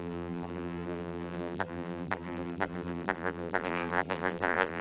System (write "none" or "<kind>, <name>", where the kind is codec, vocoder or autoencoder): vocoder, BigVGAN v2